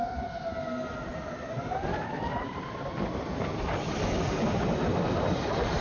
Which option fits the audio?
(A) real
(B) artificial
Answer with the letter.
A